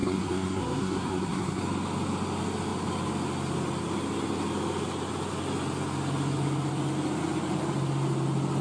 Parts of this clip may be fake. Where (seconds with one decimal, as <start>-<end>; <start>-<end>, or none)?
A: 0.0-1.6